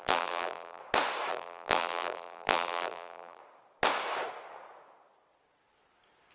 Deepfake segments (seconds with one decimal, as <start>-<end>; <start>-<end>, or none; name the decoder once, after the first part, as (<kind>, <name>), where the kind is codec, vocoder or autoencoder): 0.0-0.8 (vocoder, BigVGAN v2); 1.3-3.4